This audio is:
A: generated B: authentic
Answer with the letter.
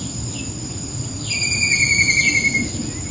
B